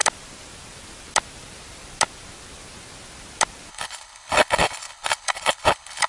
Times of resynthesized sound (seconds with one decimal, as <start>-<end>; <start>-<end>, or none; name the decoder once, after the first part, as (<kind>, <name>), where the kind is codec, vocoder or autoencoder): 3.7-6.1 (codec, HILCodec)